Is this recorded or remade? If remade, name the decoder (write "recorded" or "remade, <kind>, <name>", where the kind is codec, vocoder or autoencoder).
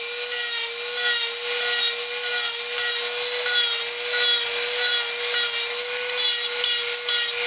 recorded